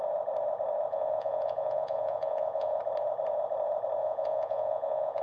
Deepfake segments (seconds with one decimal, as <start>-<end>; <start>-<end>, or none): 0.9-2.8; 4.0-5.2